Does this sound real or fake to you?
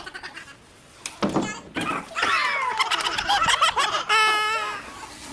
real